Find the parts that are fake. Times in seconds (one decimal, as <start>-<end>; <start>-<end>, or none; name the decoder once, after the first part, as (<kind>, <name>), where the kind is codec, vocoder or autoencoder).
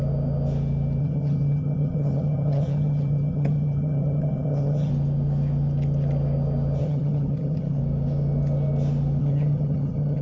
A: 1.0-4.9 (vocoder, HiFi-GAN); 6.8-7.8; 9.2-10.2